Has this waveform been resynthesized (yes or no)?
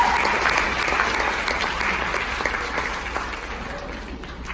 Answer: no